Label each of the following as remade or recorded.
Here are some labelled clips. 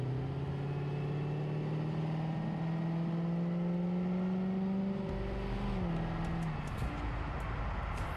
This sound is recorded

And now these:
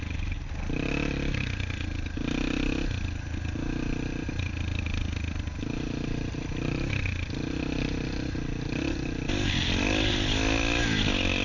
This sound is recorded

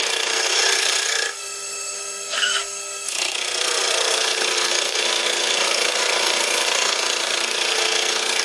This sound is remade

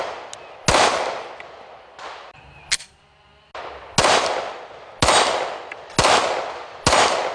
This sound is recorded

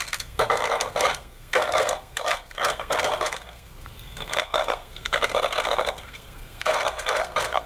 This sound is remade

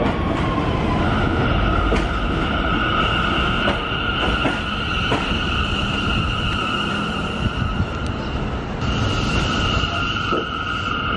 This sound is recorded